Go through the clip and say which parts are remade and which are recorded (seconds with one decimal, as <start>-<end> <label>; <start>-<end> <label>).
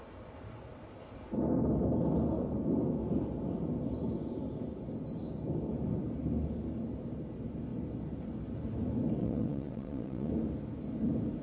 0.0-9.2 recorded; 9.2-10.3 remade; 10.3-11.4 recorded